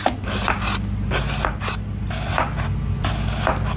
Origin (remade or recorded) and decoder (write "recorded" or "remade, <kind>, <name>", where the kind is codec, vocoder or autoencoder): recorded